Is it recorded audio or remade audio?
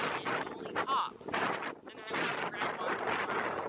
recorded